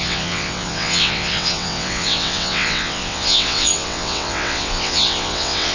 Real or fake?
fake